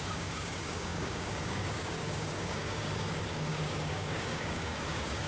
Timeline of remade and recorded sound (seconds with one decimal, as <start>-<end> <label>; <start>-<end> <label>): 0.0-5.3 remade